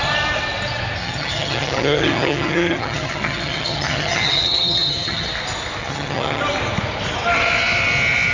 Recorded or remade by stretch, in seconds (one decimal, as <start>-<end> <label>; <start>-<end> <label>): 0.0-1.0 recorded; 1.0-5.3 remade; 5.3-5.8 recorded; 5.8-6.4 remade; 6.4-8.3 recorded